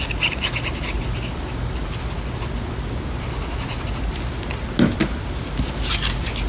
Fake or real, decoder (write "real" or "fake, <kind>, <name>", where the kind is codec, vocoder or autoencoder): real